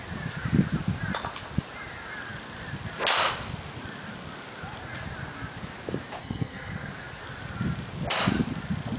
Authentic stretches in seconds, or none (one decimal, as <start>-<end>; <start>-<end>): 0.0-6.2; 6.9-9.0